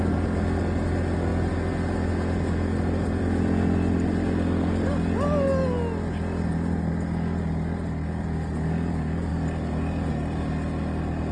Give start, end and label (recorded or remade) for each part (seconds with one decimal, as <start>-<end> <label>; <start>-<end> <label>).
0.0-11.3 recorded